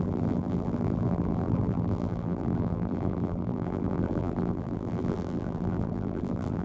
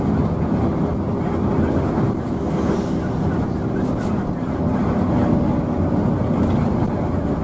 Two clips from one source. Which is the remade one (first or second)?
first